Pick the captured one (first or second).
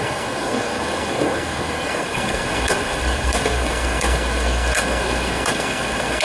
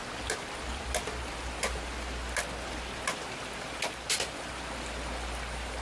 second